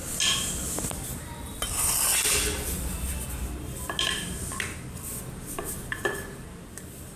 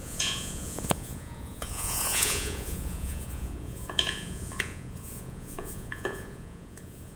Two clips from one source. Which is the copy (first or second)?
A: second